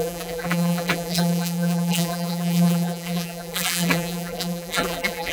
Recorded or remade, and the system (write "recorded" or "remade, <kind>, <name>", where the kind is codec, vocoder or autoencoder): remade, vocoder, BigVGAN v2